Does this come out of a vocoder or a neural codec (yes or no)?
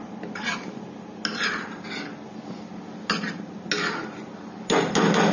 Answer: no